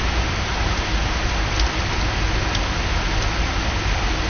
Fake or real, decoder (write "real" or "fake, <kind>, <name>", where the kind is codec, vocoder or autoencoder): real